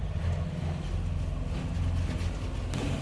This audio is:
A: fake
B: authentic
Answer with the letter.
B